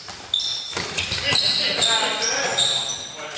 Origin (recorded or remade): recorded